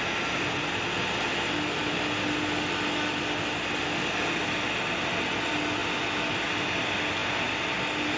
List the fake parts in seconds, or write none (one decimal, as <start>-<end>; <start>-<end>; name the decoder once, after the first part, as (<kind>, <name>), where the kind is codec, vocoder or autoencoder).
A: none

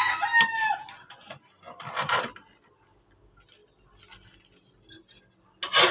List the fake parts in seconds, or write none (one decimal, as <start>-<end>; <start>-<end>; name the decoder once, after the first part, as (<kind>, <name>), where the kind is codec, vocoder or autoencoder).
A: none

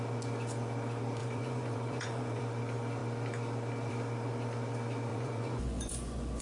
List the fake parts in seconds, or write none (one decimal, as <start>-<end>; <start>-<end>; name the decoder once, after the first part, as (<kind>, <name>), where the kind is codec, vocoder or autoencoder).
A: 1.2-2.4 (vocoder, Vocos); 5.1-6.4

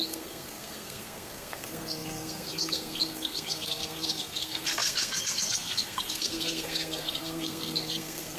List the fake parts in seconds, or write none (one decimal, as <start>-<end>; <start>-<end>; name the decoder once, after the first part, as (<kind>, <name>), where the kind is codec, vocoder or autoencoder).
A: 0.0-8.4 (codec, SNAC)

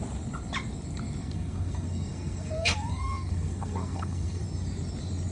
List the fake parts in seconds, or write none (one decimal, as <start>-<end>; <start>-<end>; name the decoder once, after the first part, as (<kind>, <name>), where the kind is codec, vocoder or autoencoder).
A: 1.2-4.4 (codec, SNAC)

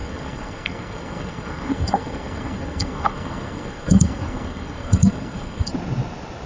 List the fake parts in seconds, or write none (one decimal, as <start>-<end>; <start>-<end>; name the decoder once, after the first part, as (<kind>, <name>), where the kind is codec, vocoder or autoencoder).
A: 0.0-5.7 (codec, SNAC)